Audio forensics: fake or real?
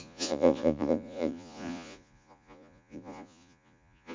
fake